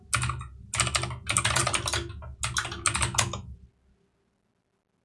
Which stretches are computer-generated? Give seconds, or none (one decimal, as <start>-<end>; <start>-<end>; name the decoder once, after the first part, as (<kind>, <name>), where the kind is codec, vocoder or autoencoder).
none